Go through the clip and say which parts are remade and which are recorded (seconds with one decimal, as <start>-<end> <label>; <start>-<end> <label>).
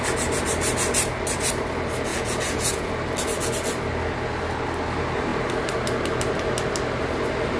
0.0-2.1 recorded; 2.1-2.9 remade; 2.9-7.6 recorded